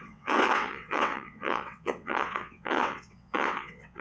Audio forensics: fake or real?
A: fake